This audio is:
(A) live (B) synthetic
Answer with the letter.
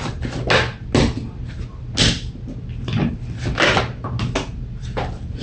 A